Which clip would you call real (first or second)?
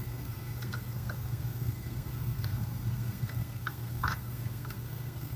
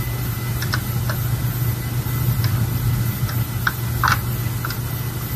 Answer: second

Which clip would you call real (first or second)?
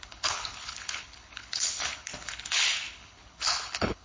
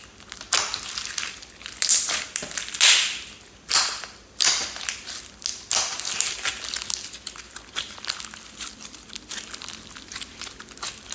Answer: second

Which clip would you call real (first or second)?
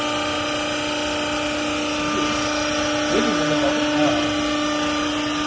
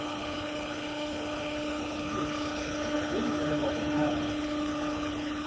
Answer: first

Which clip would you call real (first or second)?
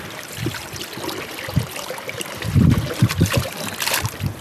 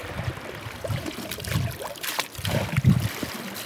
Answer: second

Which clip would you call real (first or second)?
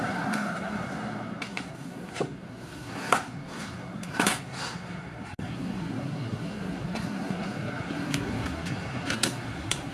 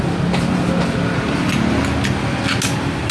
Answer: second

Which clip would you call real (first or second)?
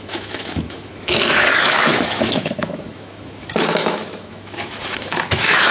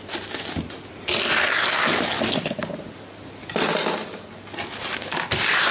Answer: second